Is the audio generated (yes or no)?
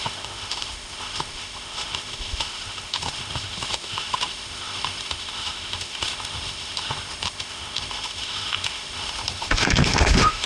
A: yes